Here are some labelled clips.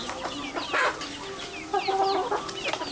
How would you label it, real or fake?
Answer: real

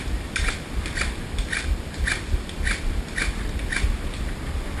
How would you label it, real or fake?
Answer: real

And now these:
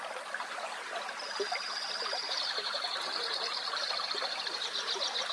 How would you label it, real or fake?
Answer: real